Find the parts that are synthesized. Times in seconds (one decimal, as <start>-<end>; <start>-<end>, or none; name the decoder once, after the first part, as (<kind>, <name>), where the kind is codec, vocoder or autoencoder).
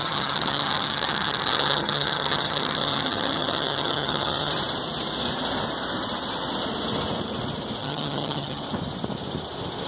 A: 0.0-4.5 (vocoder, HiFi-GAN); 7.8-8.6